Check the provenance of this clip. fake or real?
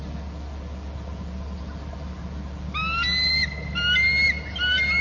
real